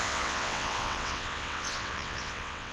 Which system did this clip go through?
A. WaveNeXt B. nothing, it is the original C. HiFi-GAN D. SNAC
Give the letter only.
A